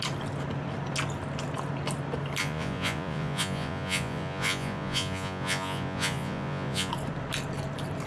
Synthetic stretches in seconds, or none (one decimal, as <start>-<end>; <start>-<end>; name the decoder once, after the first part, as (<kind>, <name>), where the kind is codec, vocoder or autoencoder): 2.4-6.9 (vocoder, Vocos)